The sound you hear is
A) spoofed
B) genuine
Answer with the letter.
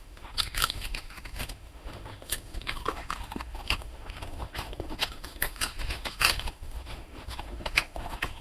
A